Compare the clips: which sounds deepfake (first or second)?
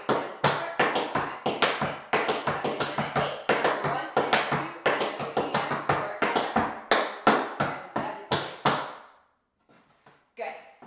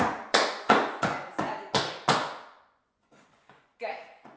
second